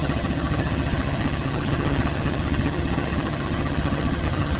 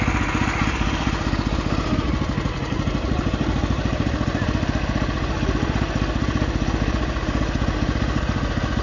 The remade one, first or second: first